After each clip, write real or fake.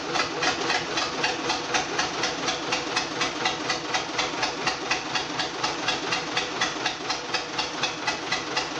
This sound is real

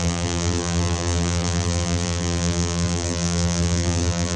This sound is fake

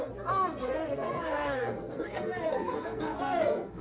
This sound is fake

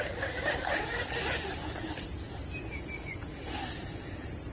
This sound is real